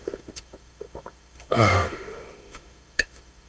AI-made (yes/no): yes